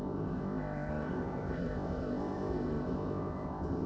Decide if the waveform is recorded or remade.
remade